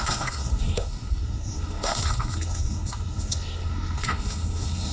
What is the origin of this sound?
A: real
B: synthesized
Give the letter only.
B